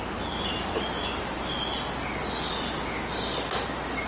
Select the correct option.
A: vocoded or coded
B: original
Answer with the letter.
B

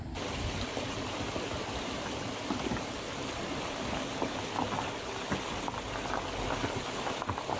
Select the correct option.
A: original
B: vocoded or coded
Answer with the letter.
A